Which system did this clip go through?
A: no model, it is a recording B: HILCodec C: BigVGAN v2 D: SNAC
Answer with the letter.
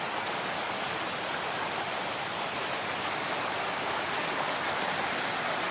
A